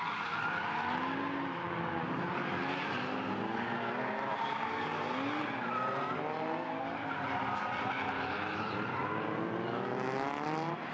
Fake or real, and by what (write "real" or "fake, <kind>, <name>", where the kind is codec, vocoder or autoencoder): real